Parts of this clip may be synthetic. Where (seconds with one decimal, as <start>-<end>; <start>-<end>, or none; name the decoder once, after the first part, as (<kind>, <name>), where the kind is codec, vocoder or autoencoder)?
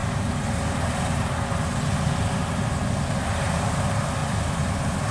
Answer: none